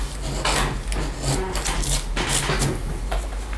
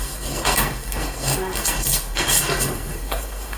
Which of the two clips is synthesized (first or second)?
second